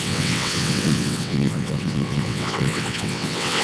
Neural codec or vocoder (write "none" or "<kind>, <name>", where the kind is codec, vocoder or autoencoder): vocoder, WaveNeXt